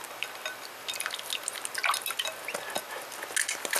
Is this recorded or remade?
recorded